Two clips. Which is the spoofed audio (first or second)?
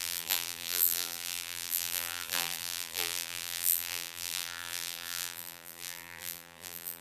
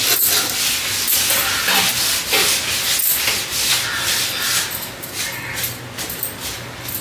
first